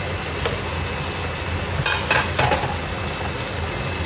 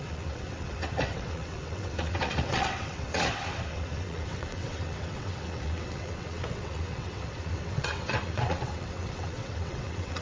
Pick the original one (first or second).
first